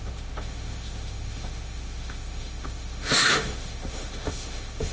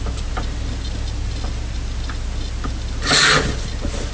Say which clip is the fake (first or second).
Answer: first